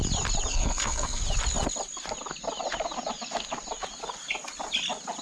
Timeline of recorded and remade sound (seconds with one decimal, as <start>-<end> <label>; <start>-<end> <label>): 0.0-0.5 recorded; 0.5-1.2 remade; 1.2-5.2 recorded